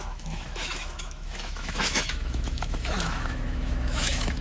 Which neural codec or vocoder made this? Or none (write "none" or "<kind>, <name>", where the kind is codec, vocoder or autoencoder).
autoencoder, DAC-VAE